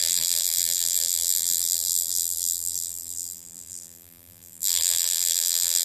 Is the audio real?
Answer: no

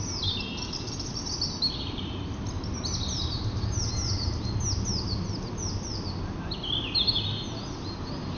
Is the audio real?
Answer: yes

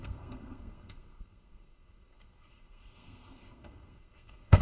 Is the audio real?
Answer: no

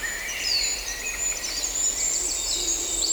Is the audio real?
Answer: no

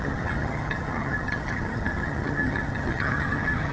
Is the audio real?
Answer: no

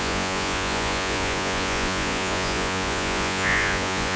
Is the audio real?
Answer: no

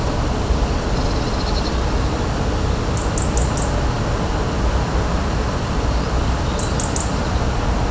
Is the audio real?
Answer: yes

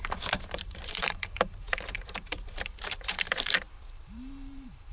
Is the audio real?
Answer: no